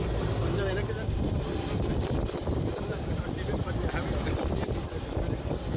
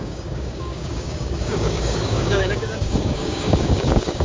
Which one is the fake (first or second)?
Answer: second